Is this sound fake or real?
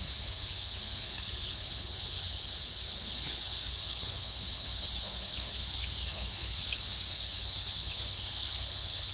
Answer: fake